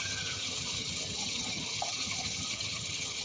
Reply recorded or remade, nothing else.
remade